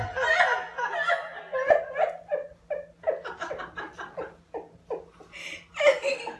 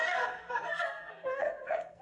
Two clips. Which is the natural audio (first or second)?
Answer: first